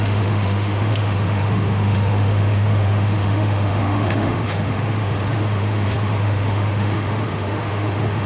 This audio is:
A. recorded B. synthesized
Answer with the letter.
B